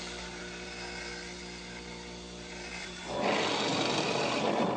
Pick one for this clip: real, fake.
real